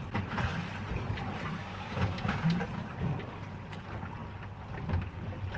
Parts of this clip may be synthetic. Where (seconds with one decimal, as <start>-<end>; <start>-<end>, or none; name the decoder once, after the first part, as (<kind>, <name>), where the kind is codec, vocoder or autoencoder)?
1.6-2.5 (codec, DAC)